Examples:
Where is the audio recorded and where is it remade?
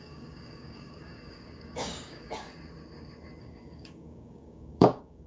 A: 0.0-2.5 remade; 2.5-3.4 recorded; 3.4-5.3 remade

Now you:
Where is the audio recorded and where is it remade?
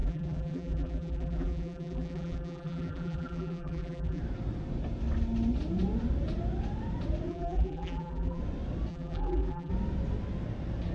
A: 0.0-4.2 remade; 4.2-7.3 recorded; 7.3-8.4 remade; 8.4-8.9 recorded; 8.9-9.7 remade; 9.7-10.9 recorded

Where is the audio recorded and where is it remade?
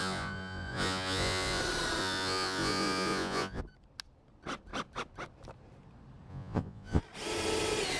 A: 0.0-1.6 remade; 1.6-2.0 recorded; 2.0-3.6 remade; 3.6-6.3 recorded; 6.3-7.0 remade; 7.0-8.0 recorded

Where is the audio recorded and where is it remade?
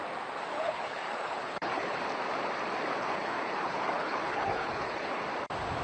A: 0.0-0.5 recorded; 0.5-2.0 remade; 2.0-3.0 recorded; 3.0-5.2 remade; 5.2-5.8 recorded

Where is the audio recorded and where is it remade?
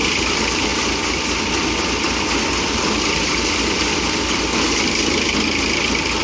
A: 0.0-6.2 recorded